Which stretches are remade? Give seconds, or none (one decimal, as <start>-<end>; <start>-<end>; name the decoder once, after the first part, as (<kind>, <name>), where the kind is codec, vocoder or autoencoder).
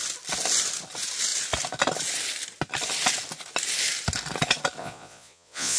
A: 4.8-5.8 (vocoder, Vocos)